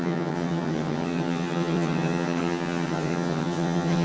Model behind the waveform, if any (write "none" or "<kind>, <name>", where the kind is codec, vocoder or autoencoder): vocoder, HiFi-GAN